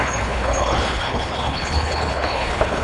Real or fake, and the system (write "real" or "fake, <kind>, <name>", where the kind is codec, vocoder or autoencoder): fake, codec, HILCodec